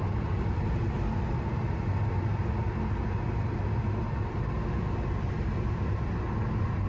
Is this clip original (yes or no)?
yes